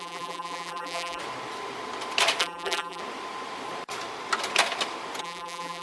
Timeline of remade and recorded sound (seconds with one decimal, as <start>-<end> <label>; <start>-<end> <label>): 0.0-1.2 remade; 1.2-2.4 recorded; 2.4-3.0 remade; 3.0-5.2 recorded; 5.2-5.8 remade